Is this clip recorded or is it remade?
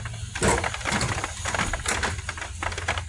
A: recorded